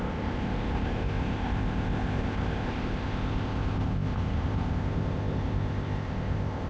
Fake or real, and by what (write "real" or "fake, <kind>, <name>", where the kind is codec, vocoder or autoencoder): fake, codec, ZipCodec